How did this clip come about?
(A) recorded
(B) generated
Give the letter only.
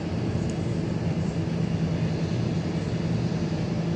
A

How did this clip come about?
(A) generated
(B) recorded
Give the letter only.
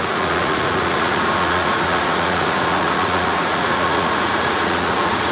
A